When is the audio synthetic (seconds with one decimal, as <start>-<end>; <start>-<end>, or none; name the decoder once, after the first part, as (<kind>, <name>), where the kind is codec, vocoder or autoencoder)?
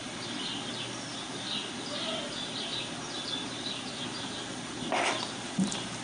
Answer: none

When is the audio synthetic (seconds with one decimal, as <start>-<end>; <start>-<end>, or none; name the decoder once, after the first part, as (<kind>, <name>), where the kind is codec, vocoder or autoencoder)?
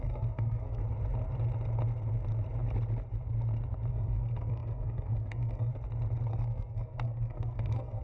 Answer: 0.0-0.8 (codec, SNAC); 3.9-5.7; 6.3-8.0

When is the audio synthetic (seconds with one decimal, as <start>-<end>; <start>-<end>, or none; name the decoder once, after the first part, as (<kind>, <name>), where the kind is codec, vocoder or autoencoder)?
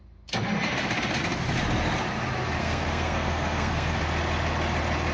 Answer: 2.6-4.0 (codec, SNAC)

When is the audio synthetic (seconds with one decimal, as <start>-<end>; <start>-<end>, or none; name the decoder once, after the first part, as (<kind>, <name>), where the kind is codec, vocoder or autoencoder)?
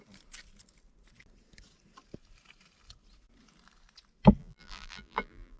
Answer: 4.4-5.6 (vocoder, BigVGAN v2)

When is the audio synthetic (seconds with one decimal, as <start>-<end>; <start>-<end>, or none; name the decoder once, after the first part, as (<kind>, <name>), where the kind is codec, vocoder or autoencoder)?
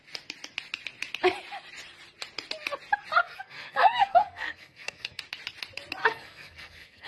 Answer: 3.2-5.2 (codec, SNAC); 6.0-7.1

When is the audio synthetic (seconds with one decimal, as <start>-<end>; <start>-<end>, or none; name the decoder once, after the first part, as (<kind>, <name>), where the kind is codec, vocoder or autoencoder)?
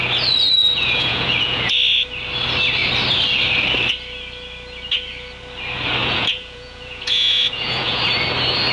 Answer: 0.6-1.7 (vocoder, Vocos); 6.0-8.0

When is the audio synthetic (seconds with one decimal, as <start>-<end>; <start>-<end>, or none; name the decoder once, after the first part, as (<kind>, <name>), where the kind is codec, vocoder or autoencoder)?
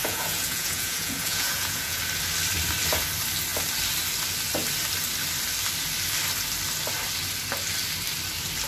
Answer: 0.0-2.0 (vocoder, Vocos)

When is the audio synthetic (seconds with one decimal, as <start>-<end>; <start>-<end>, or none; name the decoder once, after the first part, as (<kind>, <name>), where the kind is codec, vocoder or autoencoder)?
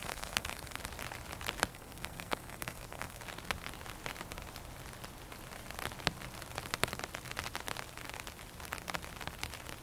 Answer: 0.0-0.8 (codec, SNAC); 1.7-3.2